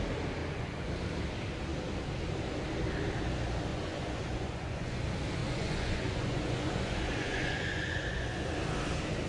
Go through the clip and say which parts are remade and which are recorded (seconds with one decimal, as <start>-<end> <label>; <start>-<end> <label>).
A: 0.0-0.4 recorded; 0.4-0.9 remade; 0.9-3.7 recorded; 3.7-5.0 remade; 5.0-5.4 recorded; 5.4-8.4 remade; 8.4-9.3 recorded